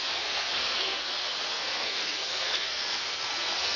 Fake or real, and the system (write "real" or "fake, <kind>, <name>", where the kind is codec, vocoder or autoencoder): fake, codec, SNAC